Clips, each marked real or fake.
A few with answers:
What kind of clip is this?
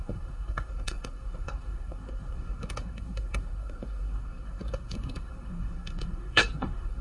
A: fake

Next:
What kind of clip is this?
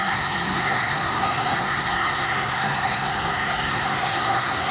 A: fake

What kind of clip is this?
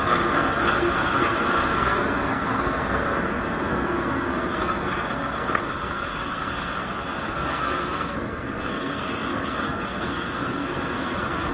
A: fake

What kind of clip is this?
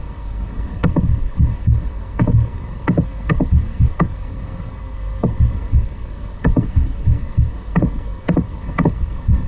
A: fake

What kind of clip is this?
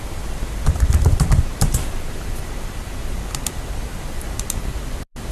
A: real